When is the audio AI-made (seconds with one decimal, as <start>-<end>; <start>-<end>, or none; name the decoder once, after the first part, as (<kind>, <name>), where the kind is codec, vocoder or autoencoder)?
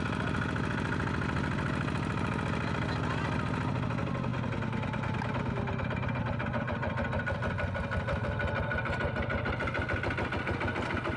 none